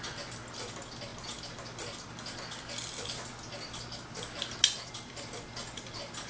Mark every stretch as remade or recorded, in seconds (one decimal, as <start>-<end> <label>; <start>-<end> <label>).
0.0-6.3 recorded